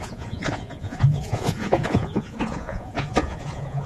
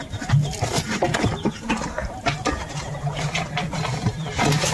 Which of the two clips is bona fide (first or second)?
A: second